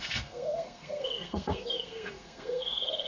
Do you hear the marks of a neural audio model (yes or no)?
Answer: yes